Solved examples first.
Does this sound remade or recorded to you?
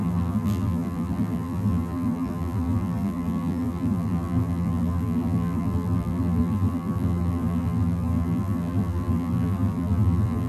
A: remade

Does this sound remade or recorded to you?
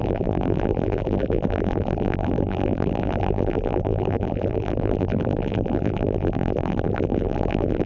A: remade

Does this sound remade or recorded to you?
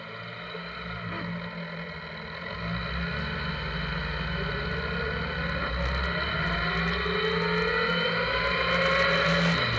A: recorded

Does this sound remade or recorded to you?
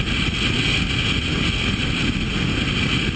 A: recorded